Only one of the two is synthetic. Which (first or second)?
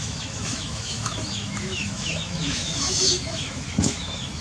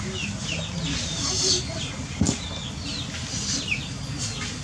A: first